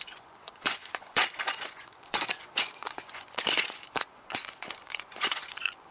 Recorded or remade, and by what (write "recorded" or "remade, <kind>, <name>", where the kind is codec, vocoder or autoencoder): remade, vocoder, Vocos